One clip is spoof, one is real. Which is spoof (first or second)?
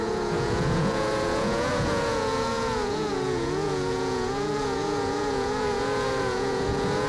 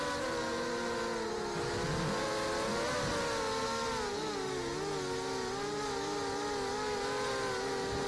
first